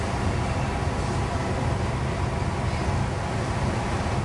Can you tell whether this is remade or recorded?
recorded